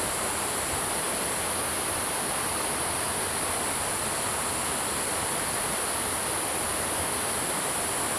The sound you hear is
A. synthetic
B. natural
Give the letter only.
B